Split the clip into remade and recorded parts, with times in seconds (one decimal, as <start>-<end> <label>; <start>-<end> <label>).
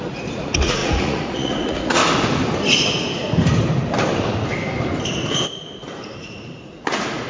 0.0-2.0 remade; 2.0-6.2 recorded; 6.2-7.3 remade